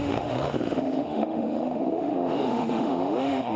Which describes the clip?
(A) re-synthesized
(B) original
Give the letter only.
A